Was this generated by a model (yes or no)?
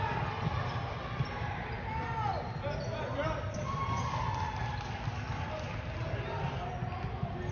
no